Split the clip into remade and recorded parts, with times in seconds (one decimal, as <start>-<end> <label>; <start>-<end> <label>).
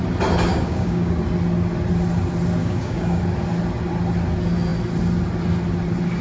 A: 0.0-0.5 recorded; 0.5-1.1 remade; 1.1-2.6 recorded; 2.6-3.2 remade; 3.2-6.2 recorded